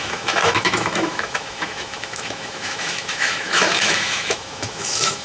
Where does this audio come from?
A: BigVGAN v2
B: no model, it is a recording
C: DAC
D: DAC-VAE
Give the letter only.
D